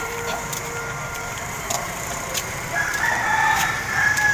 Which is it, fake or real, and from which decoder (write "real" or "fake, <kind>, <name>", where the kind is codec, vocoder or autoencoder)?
fake, vocoder, BigVGAN v2